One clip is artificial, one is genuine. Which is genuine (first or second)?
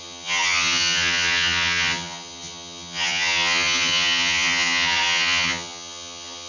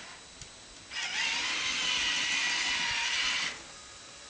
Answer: second